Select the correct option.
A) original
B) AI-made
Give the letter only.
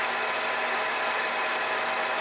A